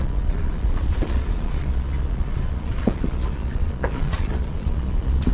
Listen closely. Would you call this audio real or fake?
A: fake